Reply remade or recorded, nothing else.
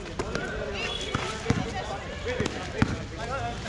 recorded